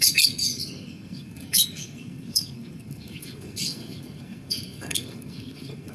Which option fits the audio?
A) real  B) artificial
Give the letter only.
B